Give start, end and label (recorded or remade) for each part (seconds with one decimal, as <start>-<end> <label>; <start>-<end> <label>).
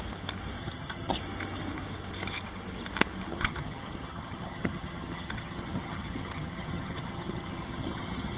0.0-0.6 recorded; 0.6-1.2 remade; 1.2-3.3 recorded; 3.3-8.4 remade